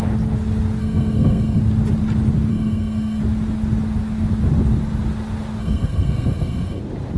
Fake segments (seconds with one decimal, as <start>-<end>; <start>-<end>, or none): 0.8-1.6; 2.5-3.2; 5.6-6.8